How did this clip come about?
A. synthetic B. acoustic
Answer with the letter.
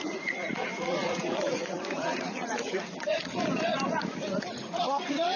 A